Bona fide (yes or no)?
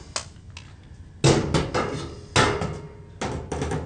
yes